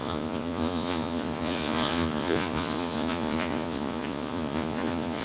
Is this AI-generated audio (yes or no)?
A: yes